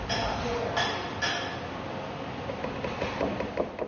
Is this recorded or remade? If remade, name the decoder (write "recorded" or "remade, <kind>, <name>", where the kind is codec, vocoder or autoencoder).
recorded